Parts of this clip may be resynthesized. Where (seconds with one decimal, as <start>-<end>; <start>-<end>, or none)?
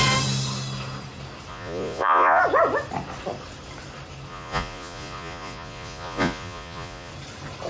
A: 1.5-2.4; 4.3-7.1